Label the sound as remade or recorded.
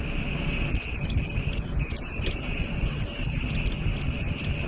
recorded